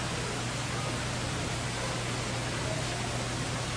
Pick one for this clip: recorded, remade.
recorded